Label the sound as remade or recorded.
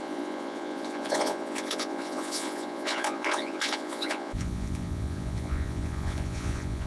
remade